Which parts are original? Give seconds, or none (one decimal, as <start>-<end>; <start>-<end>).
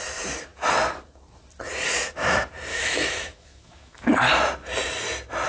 0.0-2.7; 4.1-5.5